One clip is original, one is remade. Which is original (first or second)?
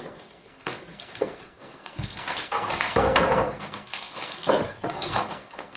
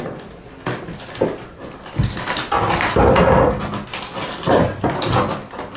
second